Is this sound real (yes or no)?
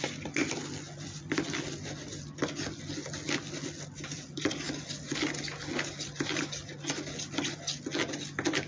yes